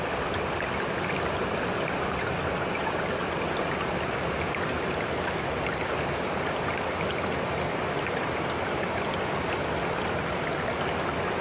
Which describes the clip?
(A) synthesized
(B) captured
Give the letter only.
B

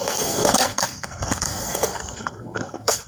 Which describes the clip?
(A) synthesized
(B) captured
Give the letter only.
A